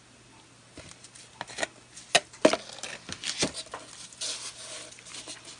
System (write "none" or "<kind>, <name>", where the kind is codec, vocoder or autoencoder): none